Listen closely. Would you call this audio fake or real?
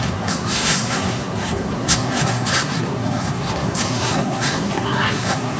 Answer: fake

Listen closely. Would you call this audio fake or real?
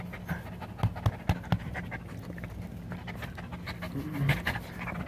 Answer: real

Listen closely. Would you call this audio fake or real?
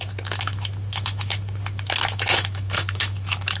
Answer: fake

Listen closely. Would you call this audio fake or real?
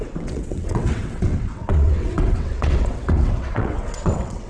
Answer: fake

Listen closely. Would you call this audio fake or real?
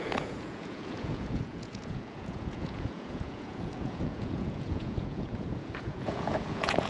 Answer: fake